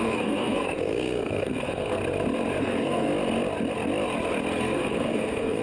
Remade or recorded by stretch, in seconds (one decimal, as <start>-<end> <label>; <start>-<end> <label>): 0.0-2.0 remade; 2.0-2.6 recorded; 2.6-3.1 remade; 3.1-4.6 recorded; 4.6-5.6 remade